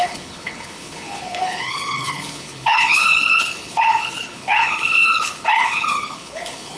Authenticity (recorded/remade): remade